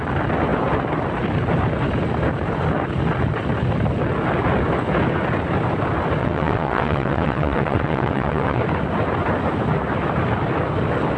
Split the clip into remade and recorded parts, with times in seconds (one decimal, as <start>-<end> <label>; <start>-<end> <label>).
0.0-6.2 recorded; 6.2-8.6 remade; 8.6-11.2 recorded